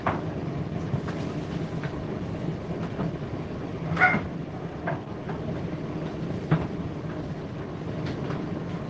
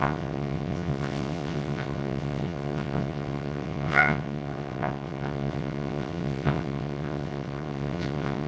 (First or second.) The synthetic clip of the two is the second